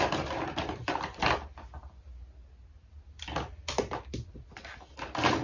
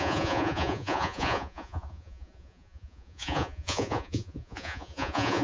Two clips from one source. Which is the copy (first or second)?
second